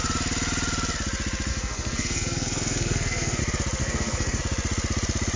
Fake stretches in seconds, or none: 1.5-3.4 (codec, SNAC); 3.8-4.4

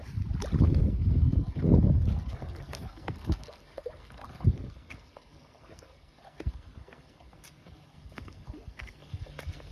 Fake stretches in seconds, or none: 0.6-9.7 (codec, SNAC)